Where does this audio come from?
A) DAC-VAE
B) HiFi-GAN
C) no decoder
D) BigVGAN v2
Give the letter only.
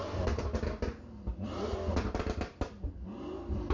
C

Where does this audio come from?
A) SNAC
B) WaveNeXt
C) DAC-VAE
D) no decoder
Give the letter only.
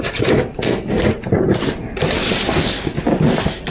D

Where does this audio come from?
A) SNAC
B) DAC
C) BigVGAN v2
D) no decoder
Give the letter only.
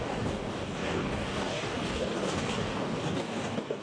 B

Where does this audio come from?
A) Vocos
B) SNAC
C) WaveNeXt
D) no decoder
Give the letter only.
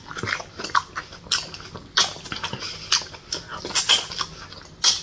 D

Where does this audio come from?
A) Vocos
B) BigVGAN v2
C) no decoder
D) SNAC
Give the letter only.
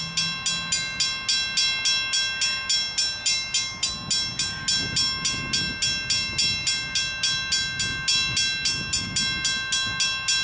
C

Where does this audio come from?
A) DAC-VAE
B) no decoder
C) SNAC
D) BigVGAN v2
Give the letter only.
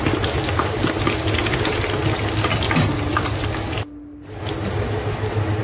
B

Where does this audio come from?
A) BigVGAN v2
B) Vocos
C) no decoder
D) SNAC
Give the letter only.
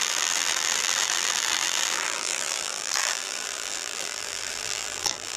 A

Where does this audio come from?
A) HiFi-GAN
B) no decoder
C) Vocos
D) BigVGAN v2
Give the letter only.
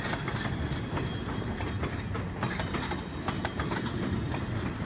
B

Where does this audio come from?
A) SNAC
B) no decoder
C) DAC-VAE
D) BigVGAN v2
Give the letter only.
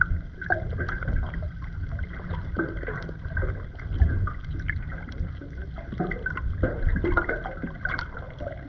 B